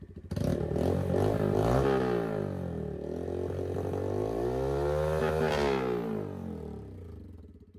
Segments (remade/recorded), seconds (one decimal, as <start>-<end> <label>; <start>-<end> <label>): 0.0-7.8 recorded